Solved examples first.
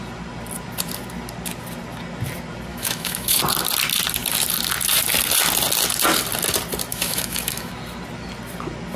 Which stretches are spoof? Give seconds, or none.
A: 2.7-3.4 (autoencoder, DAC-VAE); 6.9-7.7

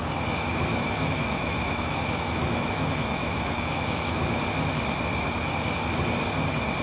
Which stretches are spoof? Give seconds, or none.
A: 0.7-4.4 (autoencoder, DAC-VAE)

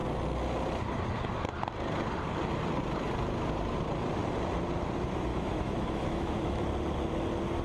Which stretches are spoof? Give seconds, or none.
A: 5.3-6.6 (autoencoder, DAC-VAE)

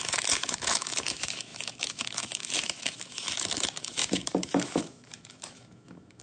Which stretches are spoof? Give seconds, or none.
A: 0.0-6.2 (autoencoder, DAC-VAE)

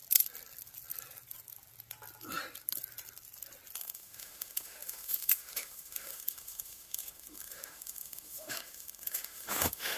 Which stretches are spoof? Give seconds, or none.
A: 3.8-10.0 (autoencoder, DAC-VAE)

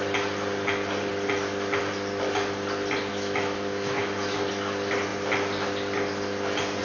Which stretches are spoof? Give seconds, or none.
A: 3.1-4.5 (autoencoder, DAC-VAE)

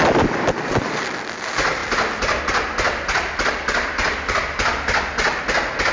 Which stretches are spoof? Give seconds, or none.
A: none